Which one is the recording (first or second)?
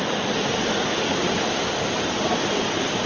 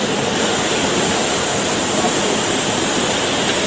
second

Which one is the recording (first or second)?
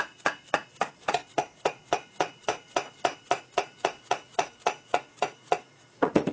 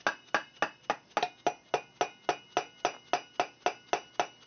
second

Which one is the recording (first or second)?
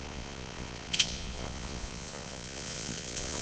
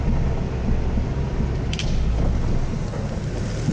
second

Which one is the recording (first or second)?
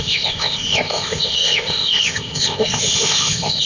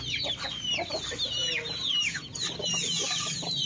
second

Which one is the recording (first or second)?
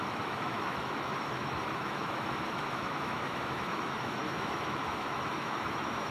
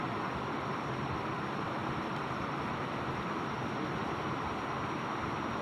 second